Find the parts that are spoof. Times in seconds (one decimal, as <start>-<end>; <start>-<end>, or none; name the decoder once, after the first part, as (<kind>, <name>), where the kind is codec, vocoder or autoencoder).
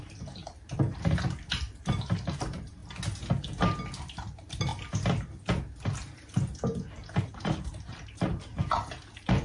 0.0-2.8 (vocoder, BigVGAN v2); 4.0-4.7; 6.5-9.4